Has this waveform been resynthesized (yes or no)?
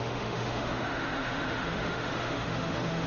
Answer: yes